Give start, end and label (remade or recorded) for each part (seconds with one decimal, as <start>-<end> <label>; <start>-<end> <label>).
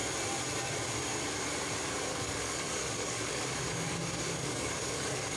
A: 0.0-2.1 recorded; 2.1-5.4 remade